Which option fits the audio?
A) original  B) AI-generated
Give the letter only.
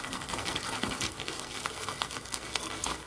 B